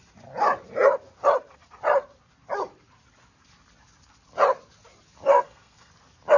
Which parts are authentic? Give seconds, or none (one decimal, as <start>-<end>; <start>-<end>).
0.0-5.3; 5.9-6.4